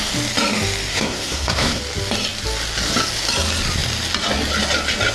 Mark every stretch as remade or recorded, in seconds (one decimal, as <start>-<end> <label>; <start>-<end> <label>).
0.0-0.9 recorded; 0.9-1.8 remade; 1.8-5.1 recorded